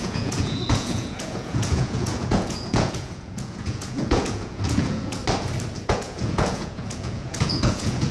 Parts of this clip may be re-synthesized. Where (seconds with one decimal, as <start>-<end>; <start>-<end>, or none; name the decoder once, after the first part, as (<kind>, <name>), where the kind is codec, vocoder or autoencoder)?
0.0-5.2 (vocoder, Vocos); 5.8-8.1